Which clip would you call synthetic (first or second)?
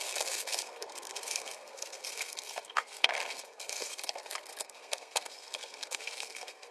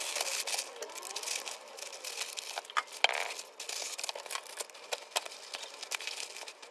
first